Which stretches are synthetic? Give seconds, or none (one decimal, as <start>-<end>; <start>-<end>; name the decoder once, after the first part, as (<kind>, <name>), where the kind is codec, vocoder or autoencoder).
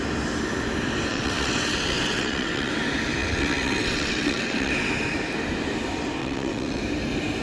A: 1.1-2.7 (vocoder, WaveNeXt); 3.2-4.7; 6.2-6.8